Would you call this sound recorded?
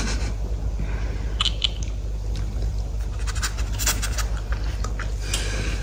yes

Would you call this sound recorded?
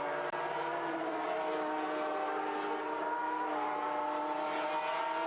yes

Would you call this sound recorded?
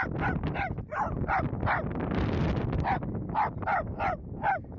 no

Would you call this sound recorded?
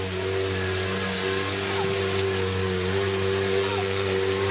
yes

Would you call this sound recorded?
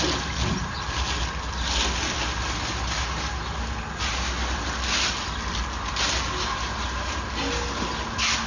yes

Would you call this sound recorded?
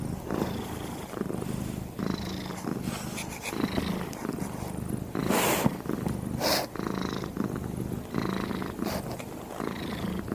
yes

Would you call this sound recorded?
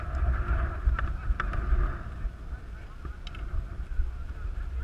yes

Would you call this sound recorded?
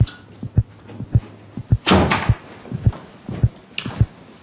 yes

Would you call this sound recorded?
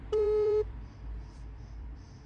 no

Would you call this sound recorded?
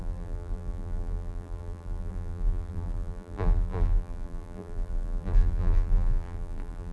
no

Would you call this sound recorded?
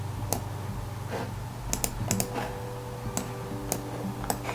yes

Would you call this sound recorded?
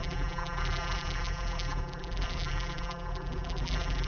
no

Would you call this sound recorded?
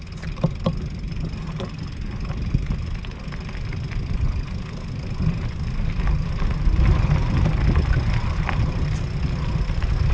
yes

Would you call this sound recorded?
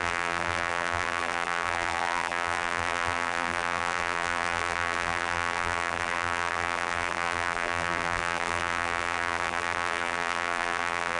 no